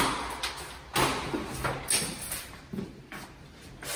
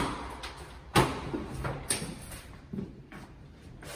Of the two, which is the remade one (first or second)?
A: second